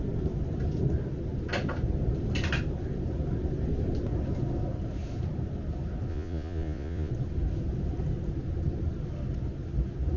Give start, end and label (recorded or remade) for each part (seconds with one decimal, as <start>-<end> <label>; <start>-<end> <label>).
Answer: 0.0-6.1 recorded; 6.1-7.1 remade; 7.1-10.2 recorded